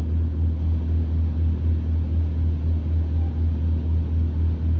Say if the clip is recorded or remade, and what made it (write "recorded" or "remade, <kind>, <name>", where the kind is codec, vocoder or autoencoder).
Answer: recorded